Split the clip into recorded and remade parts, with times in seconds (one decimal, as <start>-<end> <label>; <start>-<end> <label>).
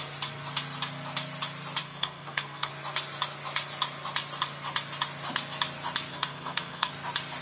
0.0-1.8 recorded; 1.8-2.7 remade; 2.7-6.1 recorded; 6.1-6.9 remade; 6.9-7.4 recorded